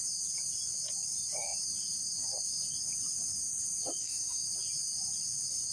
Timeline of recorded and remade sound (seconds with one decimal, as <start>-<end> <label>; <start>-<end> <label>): 0.0-4.0 recorded; 4.0-4.5 remade; 4.5-5.7 recorded